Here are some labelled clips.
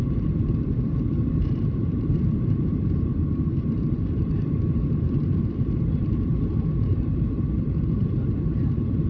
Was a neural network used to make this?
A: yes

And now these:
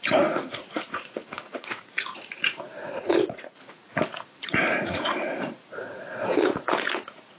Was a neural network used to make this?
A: yes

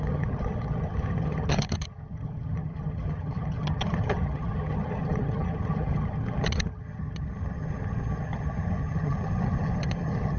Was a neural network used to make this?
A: yes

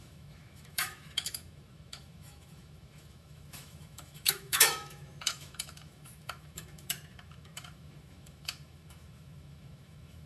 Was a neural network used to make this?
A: yes